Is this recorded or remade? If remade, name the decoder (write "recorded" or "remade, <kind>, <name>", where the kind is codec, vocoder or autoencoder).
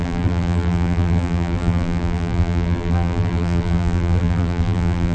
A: remade, vocoder, BigVGAN v2